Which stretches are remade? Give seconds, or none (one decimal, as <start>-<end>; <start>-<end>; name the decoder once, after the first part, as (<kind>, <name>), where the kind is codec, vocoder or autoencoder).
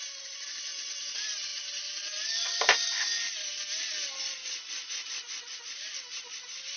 none